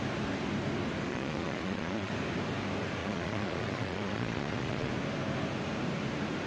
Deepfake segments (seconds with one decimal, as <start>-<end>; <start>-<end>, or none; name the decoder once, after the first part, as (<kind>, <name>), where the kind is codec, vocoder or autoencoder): 1.1-2.1 (vocoder, Vocos); 3.0-4.9